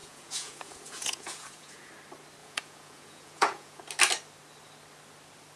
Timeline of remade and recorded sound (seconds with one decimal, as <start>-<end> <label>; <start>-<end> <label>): 0.0-1.9 remade; 1.9-2.4 recorded; 2.4-3.8 remade; 3.8-5.6 recorded